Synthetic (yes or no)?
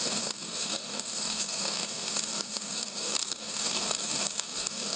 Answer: yes